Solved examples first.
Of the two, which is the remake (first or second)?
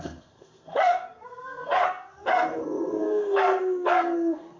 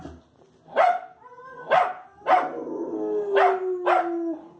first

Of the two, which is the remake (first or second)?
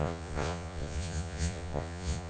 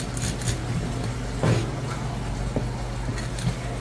first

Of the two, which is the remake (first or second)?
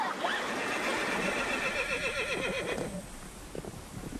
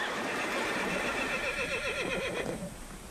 second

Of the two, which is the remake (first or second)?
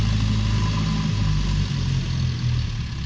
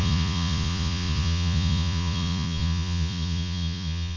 second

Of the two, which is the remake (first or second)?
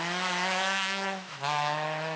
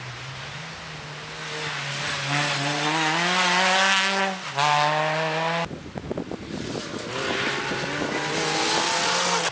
first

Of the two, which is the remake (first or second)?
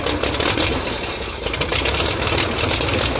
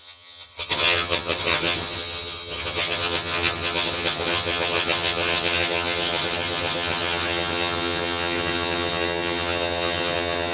second